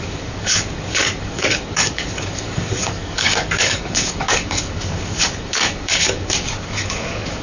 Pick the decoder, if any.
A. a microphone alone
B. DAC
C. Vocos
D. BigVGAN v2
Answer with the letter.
B